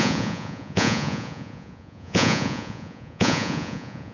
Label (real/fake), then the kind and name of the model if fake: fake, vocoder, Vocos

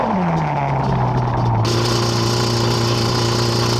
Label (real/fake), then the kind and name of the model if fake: real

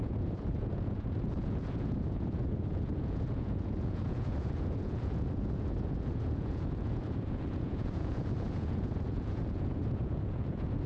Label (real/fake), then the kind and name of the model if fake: fake, vocoder, Vocos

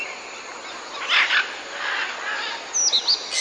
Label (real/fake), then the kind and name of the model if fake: real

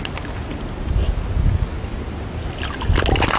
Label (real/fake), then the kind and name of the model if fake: real